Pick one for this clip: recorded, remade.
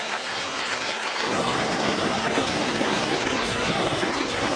remade